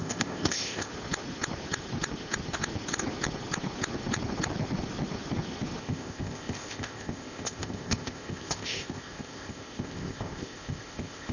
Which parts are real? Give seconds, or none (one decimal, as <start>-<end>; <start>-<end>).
0.9-5.8